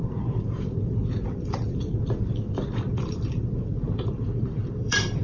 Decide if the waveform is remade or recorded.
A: remade